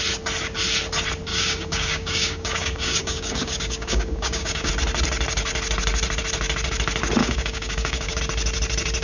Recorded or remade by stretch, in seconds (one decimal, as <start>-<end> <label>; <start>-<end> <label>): 0.0-1.3 recorded; 1.3-4.7 remade; 4.7-7.2 recorded; 7.2-8.2 remade; 8.2-9.0 recorded